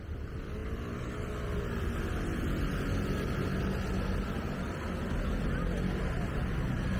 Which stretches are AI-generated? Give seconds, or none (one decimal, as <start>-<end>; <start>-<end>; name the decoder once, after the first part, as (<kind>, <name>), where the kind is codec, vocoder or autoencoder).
none